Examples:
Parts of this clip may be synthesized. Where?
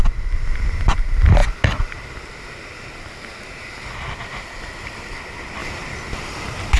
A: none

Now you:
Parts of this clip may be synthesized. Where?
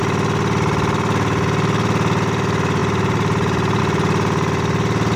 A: 2.8-3.8 (vocoder, BigVGAN v2)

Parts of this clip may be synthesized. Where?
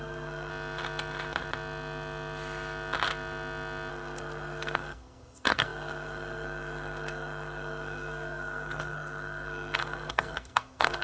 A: 0.0-0.5 (codec, SNAC); 3.9-11.0